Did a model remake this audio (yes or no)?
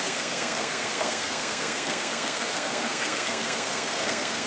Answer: yes